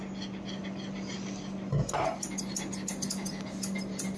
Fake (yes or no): no